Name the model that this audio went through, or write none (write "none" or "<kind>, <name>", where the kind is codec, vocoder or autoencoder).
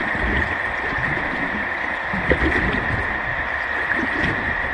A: vocoder, BigVGAN v2